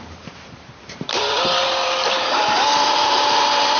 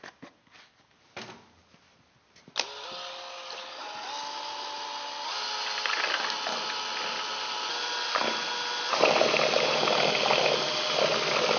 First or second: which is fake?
first